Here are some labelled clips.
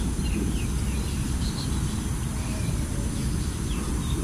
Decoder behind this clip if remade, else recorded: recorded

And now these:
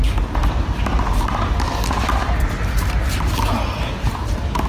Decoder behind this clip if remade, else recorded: recorded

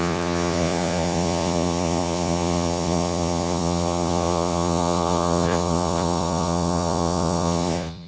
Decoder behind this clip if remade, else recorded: remade, vocoder, Vocos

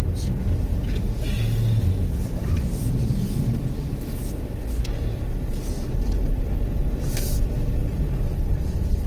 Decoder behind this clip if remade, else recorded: recorded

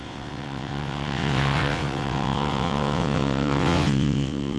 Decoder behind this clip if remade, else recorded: remade, vocoder, WaveNeXt